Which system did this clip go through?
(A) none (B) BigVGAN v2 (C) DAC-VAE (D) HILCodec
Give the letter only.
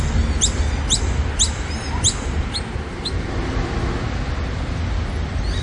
A